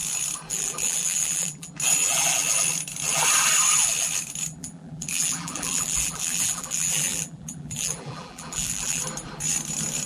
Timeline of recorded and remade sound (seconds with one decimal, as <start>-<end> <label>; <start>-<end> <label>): 0.0-0.5 recorded; 0.5-1.7 remade; 1.7-4.5 recorded; 4.5-9.0 remade; 9.0-10.1 recorded